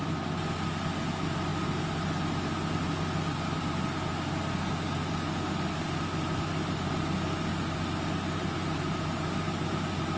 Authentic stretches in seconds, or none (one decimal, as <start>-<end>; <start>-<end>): 0.0-10.2